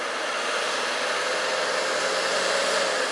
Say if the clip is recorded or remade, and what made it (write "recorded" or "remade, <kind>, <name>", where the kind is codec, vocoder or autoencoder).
recorded